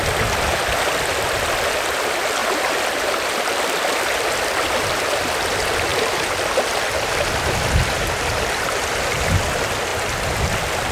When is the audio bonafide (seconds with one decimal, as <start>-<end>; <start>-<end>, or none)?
0.0-2.4; 3.6-5.9; 8.3-10.9